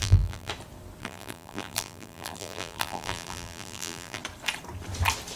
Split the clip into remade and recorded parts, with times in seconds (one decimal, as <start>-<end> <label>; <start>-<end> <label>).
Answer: 0.0-0.5 remade; 0.5-1.0 recorded; 1.0-4.2 remade; 4.2-5.4 recorded